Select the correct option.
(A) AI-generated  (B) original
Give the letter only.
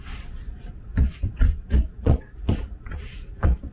A